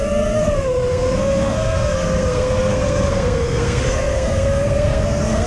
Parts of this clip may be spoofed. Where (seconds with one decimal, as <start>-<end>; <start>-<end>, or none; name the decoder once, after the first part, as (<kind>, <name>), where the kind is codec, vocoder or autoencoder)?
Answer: 0.0-5.5 (codec, SNAC)